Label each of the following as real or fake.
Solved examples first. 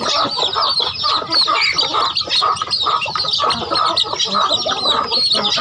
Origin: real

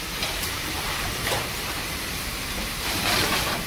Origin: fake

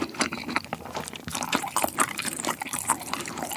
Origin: fake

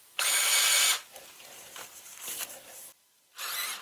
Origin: fake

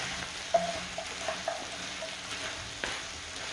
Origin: real